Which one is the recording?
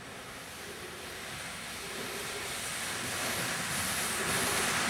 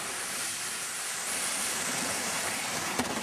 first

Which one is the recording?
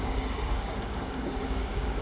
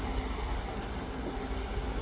second